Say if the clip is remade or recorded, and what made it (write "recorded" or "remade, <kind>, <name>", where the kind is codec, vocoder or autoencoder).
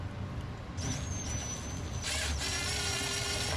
recorded